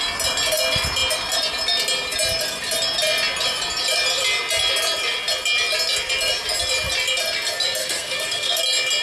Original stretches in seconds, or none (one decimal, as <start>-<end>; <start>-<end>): 0.0-7.8; 8.6-9.0